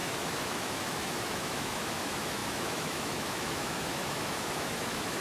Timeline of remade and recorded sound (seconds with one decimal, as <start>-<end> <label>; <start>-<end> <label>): 0.0-5.2 remade